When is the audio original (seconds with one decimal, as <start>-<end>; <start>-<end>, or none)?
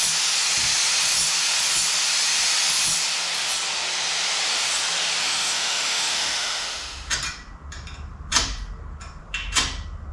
0.0-5.2; 7.1-10.1